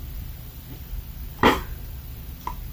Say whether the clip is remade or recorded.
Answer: remade